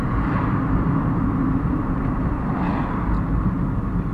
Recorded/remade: recorded